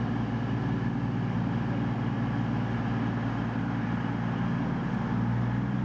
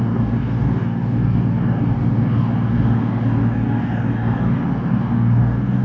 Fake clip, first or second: second